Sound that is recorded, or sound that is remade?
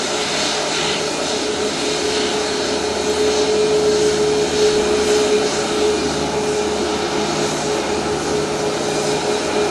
recorded